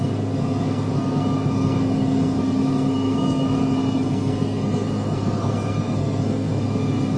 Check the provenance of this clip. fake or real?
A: fake